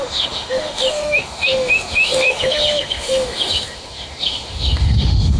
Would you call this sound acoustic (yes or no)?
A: no